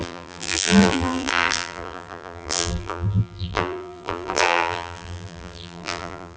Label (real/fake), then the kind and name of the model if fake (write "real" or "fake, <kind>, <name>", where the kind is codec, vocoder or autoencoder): fake, vocoder, BigVGAN v2